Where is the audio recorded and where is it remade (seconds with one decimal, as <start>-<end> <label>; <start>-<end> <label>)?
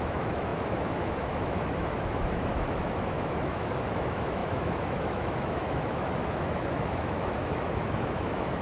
0.0-8.6 remade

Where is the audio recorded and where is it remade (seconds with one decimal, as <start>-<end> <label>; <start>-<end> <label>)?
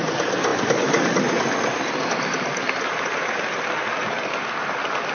0.0-5.1 recorded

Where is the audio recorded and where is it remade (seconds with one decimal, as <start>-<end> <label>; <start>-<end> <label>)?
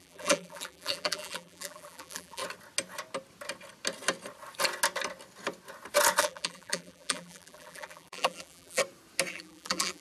0.0-2.4 remade; 2.4-6.2 recorded; 6.2-8.8 remade; 8.8-9.3 recorded; 9.3-10.0 remade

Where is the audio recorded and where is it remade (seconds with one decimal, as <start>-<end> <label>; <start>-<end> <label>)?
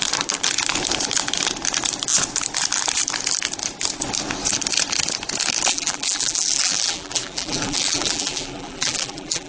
0.0-5.7 recorded; 5.7-9.5 remade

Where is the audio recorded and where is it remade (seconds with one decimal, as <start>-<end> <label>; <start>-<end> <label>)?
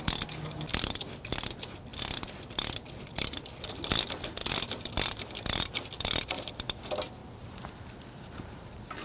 0.0-1.9 recorded; 1.9-3.7 remade; 3.7-9.0 recorded